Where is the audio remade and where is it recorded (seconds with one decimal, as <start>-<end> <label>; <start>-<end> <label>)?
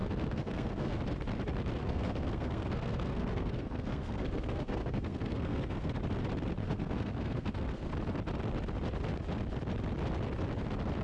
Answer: 0.0-1.0 remade; 1.0-1.8 recorded; 1.8-5.9 remade; 5.9-6.6 recorded; 6.6-7.9 remade; 7.9-11.0 recorded